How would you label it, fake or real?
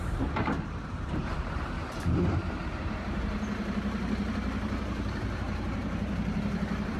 fake